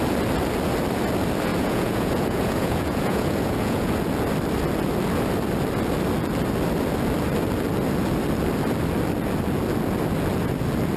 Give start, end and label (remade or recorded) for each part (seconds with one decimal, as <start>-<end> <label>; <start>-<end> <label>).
0.0-1.5 recorded; 1.5-3.9 remade; 3.9-11.0 recorded